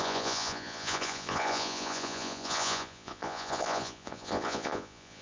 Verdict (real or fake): fake